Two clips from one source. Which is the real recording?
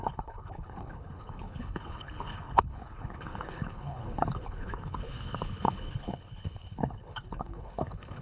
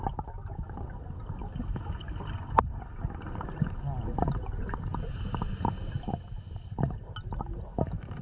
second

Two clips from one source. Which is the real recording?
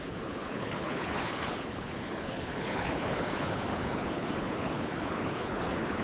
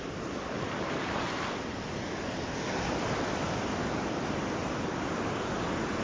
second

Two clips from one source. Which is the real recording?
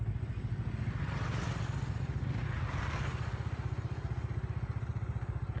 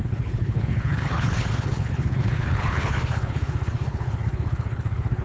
first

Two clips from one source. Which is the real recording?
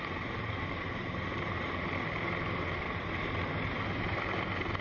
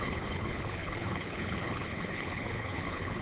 first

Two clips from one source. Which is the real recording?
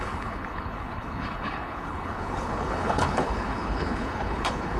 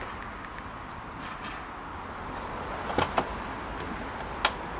second